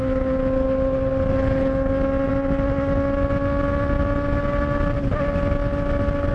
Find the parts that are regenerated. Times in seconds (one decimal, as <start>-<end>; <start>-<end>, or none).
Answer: none